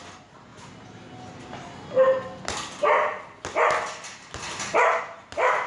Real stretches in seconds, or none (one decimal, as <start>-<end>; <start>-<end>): 0.0-5.7